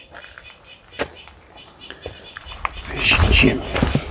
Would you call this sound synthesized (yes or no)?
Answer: no